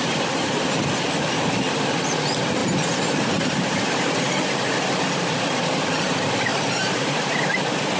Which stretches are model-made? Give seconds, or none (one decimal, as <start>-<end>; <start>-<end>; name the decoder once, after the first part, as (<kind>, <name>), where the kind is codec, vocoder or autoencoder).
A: 2.6-4.6 (vocoder, BigVGAN v2); 6.5-7.6